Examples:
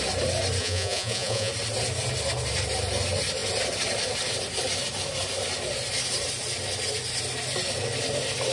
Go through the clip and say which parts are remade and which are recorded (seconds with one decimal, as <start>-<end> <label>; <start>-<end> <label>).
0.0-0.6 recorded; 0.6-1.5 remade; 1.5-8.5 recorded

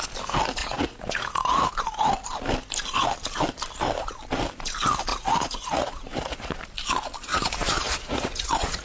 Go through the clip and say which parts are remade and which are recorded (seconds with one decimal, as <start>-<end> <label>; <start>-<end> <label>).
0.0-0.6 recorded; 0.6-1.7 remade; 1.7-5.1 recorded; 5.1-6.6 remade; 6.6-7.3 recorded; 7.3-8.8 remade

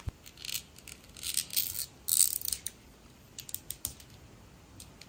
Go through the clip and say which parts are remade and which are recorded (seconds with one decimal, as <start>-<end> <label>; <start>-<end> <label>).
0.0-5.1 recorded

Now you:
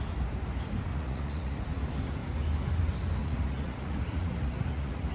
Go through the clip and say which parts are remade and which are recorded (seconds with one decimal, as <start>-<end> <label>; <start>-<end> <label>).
0.0-0.9 recorded; 0.9-1.6 remade; 1.6-3.2 recorded; 3.2-5.1 remade